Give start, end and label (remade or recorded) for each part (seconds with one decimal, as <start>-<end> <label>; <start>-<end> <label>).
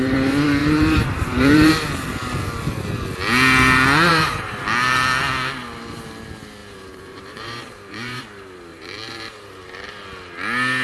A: 0.0-0.6 recorded; 0.6-1.7 remade; 1.7-4.1 recorded; 4.1-4.6 remade; 4.6-6.6 recorded; 6.6-8.2 remade; 8.2-8.7 recorded; 8.7-9.9 remade; 9.9-10.8 recorded